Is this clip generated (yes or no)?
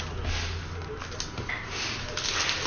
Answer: no